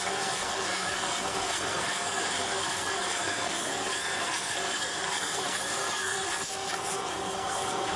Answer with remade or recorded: remade